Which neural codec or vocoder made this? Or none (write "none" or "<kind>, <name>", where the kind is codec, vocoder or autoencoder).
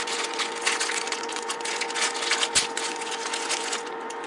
vocoder, Vocos